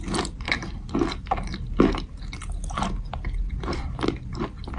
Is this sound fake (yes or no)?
no